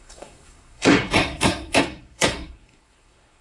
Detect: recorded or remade remade